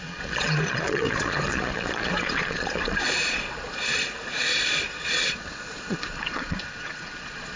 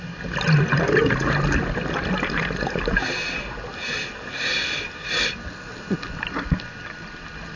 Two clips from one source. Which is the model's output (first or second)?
first